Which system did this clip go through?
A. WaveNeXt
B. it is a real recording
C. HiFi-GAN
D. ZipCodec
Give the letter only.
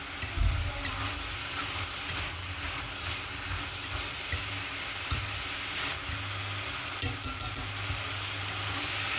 B